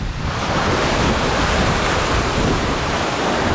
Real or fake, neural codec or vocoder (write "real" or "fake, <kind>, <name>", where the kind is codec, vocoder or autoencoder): fake, vocoder, BigVGAN v2